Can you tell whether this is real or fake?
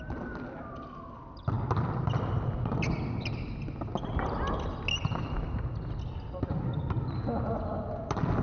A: real